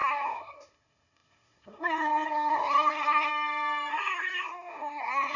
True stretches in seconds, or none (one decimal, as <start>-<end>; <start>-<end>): 3.3-3.9